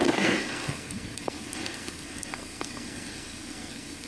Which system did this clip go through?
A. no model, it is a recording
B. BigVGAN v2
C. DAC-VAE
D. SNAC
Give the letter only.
D